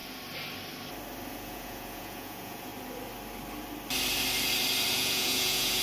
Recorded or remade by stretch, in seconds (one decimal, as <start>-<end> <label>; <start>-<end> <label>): 0.0-1.3 recorded; 1.3-2.7 remade; 2.7-4.9 recorded; 4.9-5.8 remade